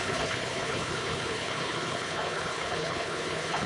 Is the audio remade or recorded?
remade